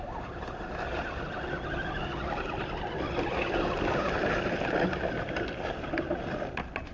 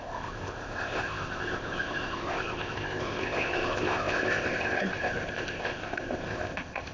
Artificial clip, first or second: second